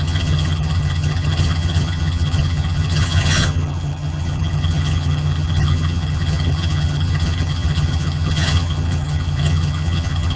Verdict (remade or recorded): remade